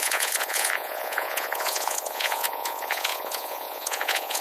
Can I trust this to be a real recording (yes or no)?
no